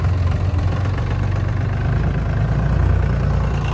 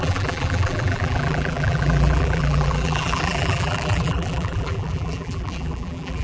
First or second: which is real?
first